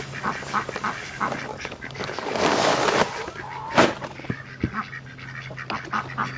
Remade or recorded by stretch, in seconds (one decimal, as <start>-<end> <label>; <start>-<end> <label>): 0.0-1.5 recorded; 1.5-2.8 remade; 2.8-6.4 recorded